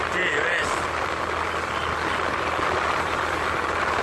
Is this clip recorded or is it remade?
recorded